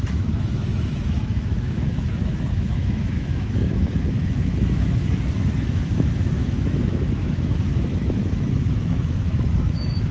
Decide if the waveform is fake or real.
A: fake